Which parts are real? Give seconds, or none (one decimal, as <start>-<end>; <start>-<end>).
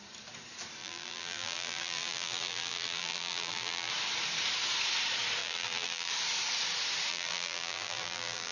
0.0-0.8; 3.9-5.4; 6.1-7.1